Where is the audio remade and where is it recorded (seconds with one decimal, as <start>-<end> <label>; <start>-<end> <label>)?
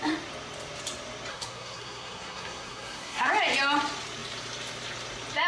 0.0-1.3 recorded; 1.3-3.3 remade; 3.3-5.5 recorded